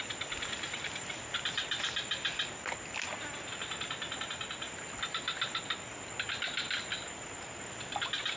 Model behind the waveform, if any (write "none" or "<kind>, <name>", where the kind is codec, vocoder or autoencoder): none